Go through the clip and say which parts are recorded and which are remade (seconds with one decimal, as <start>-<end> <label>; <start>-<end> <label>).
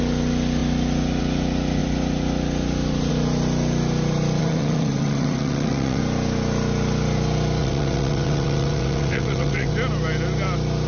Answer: 0.0-4.4 recorded; 4.4-6.0 remade; 6.0-7.6 recorded; 7.6-9.7 remade; 9.7-10.9 recorded